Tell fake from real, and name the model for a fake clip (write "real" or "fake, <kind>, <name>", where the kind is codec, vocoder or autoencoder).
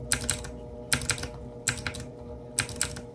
real